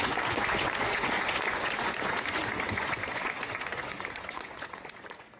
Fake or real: fake